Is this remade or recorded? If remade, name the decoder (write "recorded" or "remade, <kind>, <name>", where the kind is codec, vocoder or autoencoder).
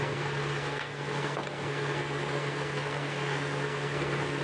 remade, codec, SNAC